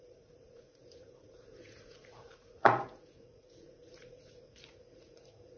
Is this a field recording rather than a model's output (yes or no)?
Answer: no